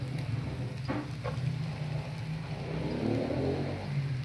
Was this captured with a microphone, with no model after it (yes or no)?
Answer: yes